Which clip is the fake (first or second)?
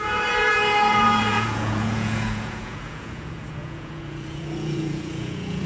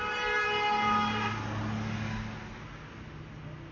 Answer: first